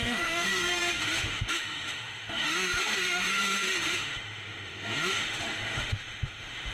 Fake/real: fake